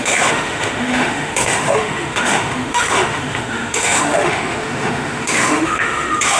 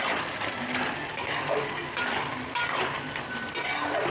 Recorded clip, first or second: second